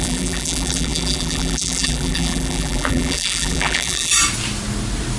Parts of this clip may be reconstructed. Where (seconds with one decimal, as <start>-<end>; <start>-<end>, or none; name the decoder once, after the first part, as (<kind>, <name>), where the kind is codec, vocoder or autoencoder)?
0.0-4.1 (vocoder, BigVGAN v2)